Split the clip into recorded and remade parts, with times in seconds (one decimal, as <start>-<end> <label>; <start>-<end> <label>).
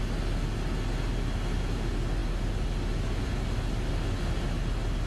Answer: 0.0-5.1 recorded